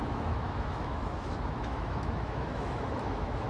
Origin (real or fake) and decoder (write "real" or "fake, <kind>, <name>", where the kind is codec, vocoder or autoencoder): fake, autoencoder, DAC-VAE